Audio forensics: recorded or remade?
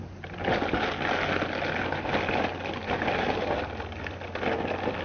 recorded